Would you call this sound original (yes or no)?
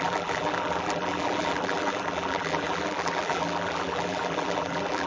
no